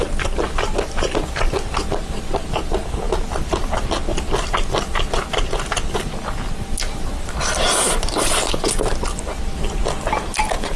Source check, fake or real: real